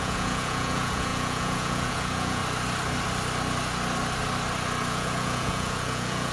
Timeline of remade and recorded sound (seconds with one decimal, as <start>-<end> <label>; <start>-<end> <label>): 0.0-2.4 remade; 2.4-4.9 recorded; 4.9-6.3 remade